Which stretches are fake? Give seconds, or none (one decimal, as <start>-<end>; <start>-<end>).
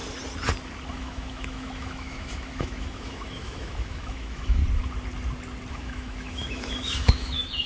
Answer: 0.9-4.6; 5.7-7.7